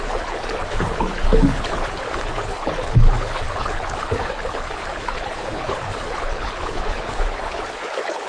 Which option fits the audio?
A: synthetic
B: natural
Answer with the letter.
A